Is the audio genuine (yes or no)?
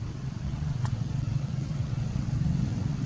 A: no